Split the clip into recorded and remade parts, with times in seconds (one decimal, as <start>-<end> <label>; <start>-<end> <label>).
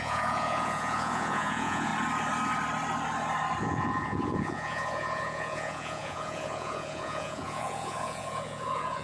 0.0-1.9 remade; 1.9-3.6 recorded; 3.6-9.0 remade